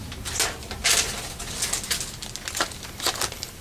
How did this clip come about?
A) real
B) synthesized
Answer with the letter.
A